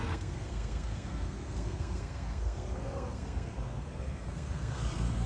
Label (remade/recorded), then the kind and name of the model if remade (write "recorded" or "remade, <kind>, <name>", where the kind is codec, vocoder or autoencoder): remade, codec, SNAC